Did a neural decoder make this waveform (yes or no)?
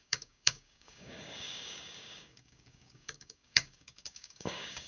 yes